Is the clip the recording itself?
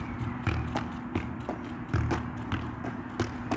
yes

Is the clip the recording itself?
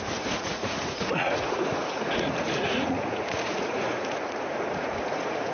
no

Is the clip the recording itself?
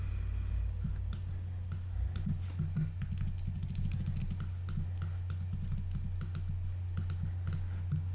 yes